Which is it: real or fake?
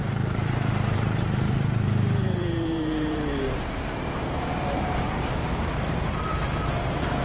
fake